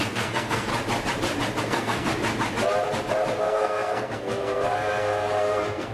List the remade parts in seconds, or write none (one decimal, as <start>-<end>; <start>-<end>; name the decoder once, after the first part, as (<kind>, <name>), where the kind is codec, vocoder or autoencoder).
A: 0.0-0.7 (codec, SNAC); 1.6-2.1; 3.4-5.9